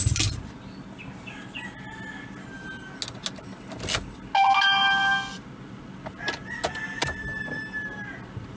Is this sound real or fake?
real